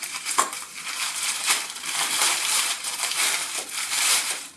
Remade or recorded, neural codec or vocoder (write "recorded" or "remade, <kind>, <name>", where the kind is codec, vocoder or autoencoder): remade, vocoder, BigVGAN v2